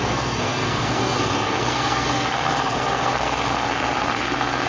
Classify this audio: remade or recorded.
remade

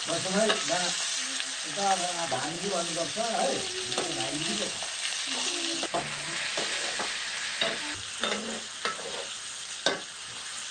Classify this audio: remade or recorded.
recorded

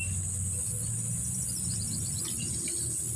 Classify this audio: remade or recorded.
recorded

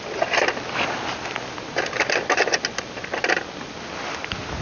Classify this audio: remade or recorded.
recorded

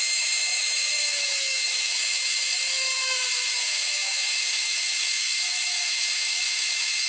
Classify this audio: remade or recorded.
remade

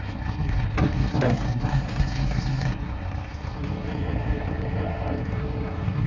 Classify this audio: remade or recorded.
remade